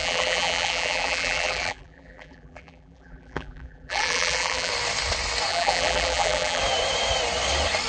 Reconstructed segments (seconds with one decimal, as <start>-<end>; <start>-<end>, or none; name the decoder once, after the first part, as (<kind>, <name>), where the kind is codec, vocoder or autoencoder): 0.0-4.7 (vocoder, BigVGAN v2); 5.5-6.6